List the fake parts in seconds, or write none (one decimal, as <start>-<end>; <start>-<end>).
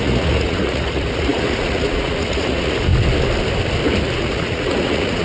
0.0-2.9; 4.0-5.2